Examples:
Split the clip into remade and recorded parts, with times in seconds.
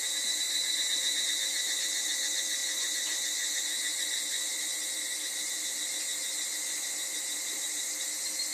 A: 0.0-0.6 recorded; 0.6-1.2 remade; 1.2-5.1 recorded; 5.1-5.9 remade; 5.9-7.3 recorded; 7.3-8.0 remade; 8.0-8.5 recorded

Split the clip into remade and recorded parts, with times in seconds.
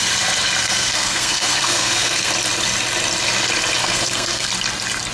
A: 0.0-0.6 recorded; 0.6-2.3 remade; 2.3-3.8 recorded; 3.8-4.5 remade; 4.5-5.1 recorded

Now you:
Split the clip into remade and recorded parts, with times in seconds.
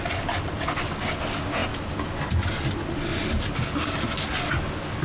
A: 0.0-5.0 recorded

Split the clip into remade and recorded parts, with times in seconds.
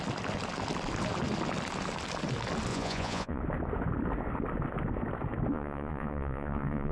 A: 0.0-2.7 recorded; 2.7-3.4 remade; 3.4-5.5 recorded; 5.5-6.9 remade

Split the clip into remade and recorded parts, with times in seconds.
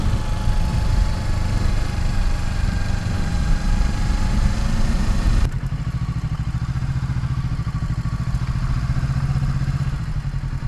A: 0.0-0.7 recorded; 0.7-5.8 remade; 5.8-10.7 recorded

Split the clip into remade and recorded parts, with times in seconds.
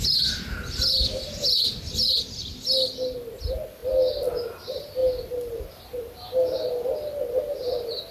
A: 0.0-2.4 recorded; 2.4-3.1 remade; 3.1-5.0 recorded; 5.0-5.7 remade; 5.7-8.1 recorded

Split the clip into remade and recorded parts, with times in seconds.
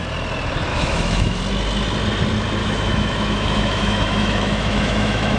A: 0.0-0.7 recorded; 0.7-1.4 remade; 1.4-2.6 recorded; 2.6-5.4 remade